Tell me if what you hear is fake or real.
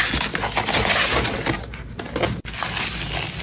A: real